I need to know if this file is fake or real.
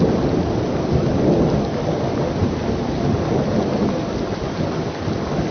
real